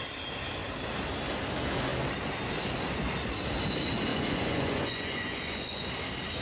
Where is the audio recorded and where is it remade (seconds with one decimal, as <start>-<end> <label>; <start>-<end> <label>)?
0.0-4.1 recorded; 4.1-5.9 remade; 5.9-6.4 recorded